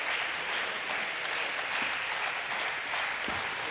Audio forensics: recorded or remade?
recorded